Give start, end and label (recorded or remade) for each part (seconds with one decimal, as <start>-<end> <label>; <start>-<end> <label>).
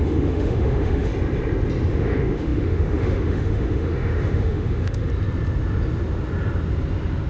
0.0-1.1 remade; 1.1-1.9 recorded; 1.9-5.1 remade; 5.1-7.3 recorded